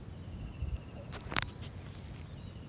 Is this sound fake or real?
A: real